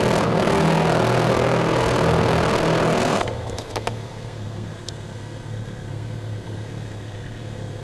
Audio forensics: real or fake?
fake